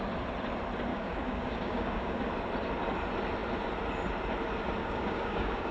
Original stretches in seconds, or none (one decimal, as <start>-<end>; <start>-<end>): 0.0-0.9; 2.2-4.8